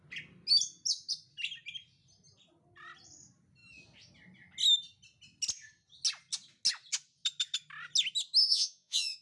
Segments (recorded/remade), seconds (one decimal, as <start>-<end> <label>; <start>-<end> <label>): 0.0-8.4 recorded; 8.4-9.2 remade